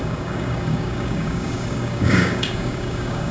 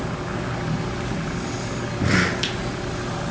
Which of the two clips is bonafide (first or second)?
second